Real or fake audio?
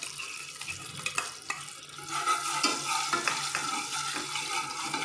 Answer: real